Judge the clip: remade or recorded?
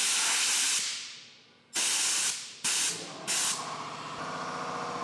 recorded